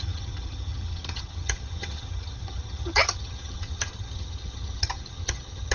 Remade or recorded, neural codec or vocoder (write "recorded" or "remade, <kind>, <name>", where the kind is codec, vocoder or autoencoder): remade, vocoder, HiFi-GAN